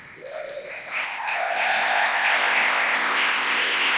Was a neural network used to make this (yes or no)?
yes